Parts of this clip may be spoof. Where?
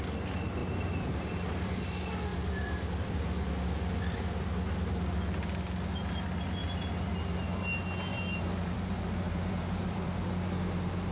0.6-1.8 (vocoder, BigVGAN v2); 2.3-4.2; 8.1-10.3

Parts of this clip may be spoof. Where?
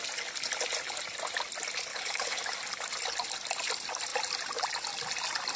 1.9-2.4 (codec, HILCodec)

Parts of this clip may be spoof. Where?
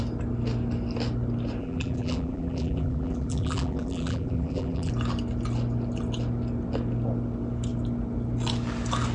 1.6-4.9 (vocoder, BigVGAN v2)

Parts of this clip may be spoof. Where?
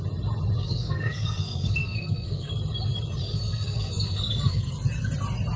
0.6-2.5 (codec, SNAC); 3.2-4.7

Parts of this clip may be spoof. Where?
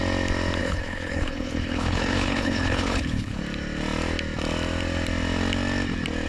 0.6-3.4 (codec, HILCodec)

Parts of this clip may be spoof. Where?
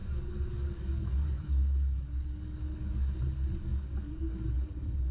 0.0-3.1 (codec, DAC); 3.7-5.1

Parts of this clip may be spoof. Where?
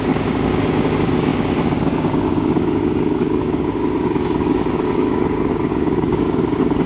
0.0-6.9 (codec, DAC)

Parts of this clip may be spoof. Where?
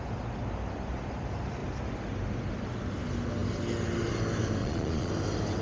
4.6-5.1 (vocoder, Vocos)